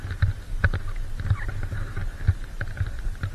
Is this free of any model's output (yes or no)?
yes